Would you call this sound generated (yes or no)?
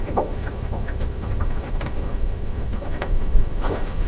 yes